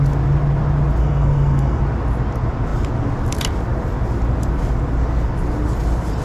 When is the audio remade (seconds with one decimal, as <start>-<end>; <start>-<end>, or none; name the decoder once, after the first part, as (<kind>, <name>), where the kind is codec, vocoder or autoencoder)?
1.0-1.8 (codec, SNAC)

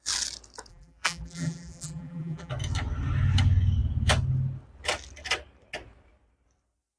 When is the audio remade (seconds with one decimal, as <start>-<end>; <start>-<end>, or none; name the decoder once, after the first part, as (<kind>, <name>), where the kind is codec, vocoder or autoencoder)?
0.7-2.5 (vocoder, BigVGAN v2)

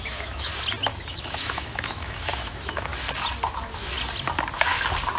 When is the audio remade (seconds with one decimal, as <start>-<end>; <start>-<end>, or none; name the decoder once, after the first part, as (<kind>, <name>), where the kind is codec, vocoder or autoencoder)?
0.0-0.5 (autoencoder, DAC-VAE); 1.1-2.9

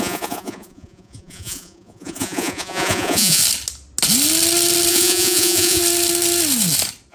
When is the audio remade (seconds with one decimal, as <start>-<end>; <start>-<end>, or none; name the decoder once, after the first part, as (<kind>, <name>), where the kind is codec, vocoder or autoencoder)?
0.0-3.4 (vocoder, Vocos); 4.9-5.8

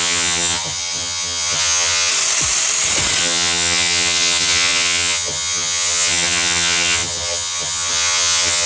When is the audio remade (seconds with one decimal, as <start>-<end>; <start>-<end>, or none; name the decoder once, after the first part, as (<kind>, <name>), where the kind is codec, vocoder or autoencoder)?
0.0-2.1 (vocoder, HiFi-GAN); 3.2-8.7

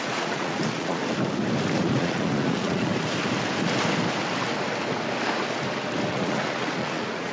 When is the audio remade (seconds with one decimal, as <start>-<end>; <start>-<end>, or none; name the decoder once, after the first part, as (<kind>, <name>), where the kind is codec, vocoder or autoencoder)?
0.0-1.0 (vocoder, Vocos); 1.7-2.9; 6.1-7.3

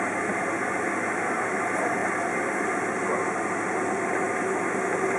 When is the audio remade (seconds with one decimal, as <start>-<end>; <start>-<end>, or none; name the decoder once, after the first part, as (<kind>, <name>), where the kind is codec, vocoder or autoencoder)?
none

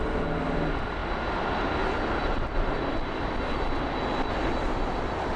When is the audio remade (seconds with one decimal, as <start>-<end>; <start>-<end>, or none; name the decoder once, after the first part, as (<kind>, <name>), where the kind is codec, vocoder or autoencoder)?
none